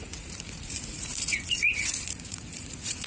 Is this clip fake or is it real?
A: fake